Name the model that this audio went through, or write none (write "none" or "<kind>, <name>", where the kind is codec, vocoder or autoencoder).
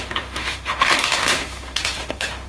autoencoder, DAC-VAE